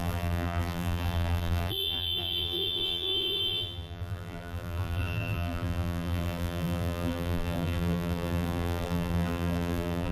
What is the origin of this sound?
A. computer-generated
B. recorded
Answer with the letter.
A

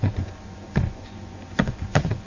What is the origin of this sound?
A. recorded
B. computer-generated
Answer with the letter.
B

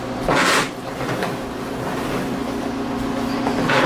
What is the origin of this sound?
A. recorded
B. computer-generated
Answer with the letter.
A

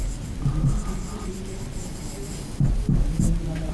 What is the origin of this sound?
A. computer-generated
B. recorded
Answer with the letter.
B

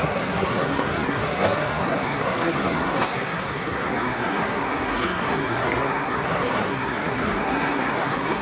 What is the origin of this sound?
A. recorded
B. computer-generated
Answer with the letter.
B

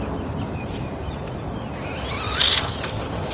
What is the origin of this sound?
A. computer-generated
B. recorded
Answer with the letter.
B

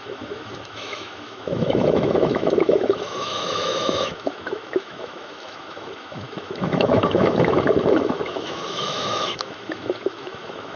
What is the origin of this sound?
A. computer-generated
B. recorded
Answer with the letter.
A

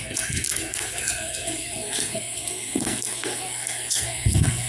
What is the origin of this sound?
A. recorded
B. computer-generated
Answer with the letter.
B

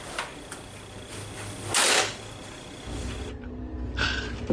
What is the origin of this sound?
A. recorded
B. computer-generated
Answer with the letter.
A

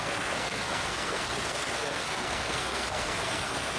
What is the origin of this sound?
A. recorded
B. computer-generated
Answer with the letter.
B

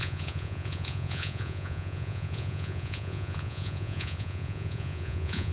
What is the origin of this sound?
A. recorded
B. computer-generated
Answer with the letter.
B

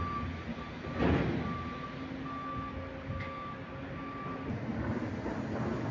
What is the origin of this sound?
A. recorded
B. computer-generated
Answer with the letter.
A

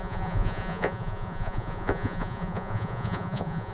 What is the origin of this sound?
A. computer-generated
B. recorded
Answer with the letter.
A